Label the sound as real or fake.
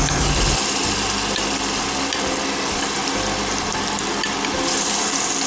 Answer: real